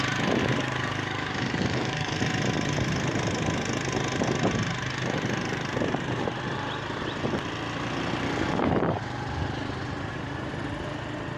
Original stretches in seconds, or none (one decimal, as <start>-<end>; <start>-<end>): 0.0-0.4; 2.2-11.4